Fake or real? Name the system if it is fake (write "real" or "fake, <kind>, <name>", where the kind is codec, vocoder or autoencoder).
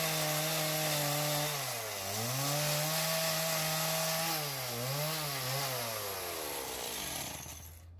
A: real